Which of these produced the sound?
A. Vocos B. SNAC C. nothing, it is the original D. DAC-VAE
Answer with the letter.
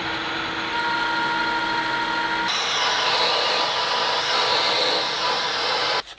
C